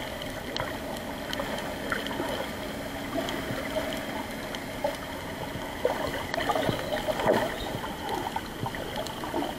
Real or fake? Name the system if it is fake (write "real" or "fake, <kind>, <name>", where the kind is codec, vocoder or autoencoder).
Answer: real